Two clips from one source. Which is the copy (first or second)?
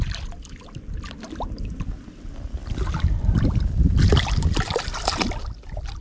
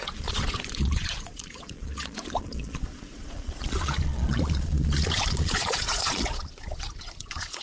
second